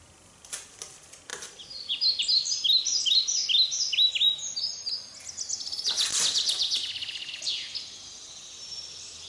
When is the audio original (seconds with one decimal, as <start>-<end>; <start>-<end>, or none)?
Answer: 0.0-9.3